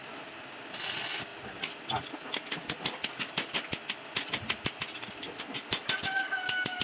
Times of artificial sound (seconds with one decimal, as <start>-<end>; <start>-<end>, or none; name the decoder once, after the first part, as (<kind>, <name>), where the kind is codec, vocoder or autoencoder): none